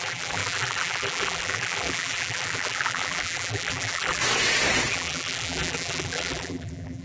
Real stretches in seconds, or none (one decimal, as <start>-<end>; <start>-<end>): 4.2-4.9

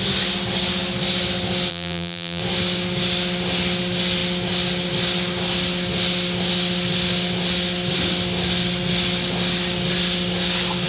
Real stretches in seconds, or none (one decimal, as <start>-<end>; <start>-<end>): 0.0-1.7; 2.4-10.9

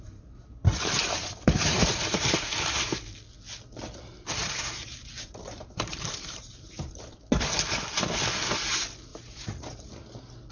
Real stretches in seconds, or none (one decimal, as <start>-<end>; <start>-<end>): 0.0-1.0; 2.7-4.4; 7.2-9.1; 9.9-10.5

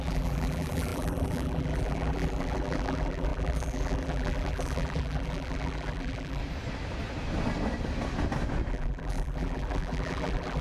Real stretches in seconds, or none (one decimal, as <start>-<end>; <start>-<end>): 6.4-8.7